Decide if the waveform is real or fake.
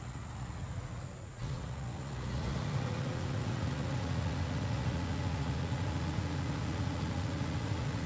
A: fake